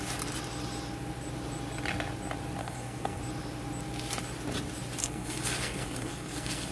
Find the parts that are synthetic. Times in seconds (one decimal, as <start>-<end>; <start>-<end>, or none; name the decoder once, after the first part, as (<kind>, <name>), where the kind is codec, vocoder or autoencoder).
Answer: 2.6-3.2 (codec, SNAC); 5.0-6.7

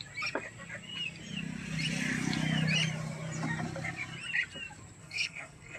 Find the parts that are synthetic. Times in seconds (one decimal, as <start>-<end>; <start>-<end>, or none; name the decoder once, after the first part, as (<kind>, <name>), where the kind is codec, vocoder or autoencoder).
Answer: 5.0-5.8 (codec, SNAC)

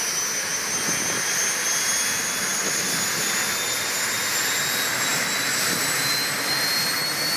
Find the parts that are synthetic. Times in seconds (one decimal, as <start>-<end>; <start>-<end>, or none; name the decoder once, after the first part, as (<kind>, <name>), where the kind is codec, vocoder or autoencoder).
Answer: none

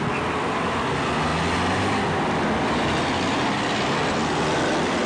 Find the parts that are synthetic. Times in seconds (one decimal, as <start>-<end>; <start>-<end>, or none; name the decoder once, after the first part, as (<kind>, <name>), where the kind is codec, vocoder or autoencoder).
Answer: none